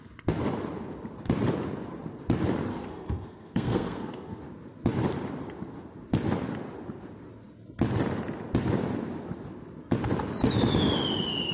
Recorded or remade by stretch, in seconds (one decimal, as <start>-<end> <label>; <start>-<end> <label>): 0.0-2.7 recorded; 2.7-4.4 remade; 4.4-11.5 recorded